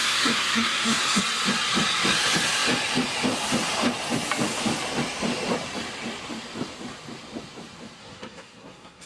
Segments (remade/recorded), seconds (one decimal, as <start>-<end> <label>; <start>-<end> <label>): 0.0-1.2 remade; 1.2-8.0 recorded; 8.0-9.1 remade